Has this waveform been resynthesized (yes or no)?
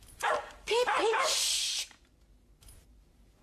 yes